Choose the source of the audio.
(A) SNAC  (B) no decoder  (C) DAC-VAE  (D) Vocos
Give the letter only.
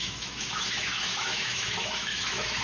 C